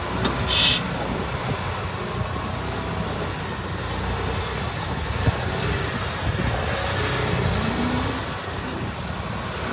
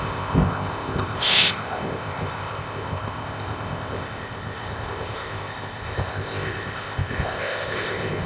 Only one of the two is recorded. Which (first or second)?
first